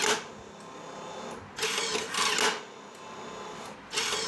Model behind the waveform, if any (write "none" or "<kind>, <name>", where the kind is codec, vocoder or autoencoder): none